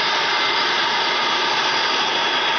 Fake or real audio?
real